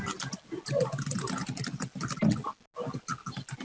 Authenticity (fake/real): real